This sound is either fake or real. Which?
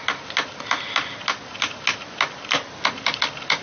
real